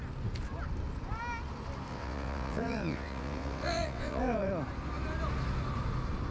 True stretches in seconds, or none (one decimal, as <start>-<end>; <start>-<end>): 0.0-1.9; 4.5-6.3